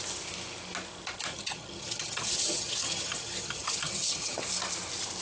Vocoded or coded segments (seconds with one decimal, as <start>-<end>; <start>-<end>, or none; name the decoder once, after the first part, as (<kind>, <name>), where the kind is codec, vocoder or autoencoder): 1.3-4.4 (vocoder, HiFi-GAN)